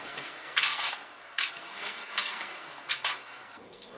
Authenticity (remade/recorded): remade